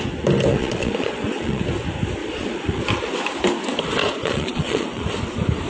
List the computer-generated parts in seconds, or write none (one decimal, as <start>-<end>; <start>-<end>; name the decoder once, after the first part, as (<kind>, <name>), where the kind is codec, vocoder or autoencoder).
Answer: 0.5-1.6 (vocoder, Vocos); 2.2-2.8; 4.0-5.1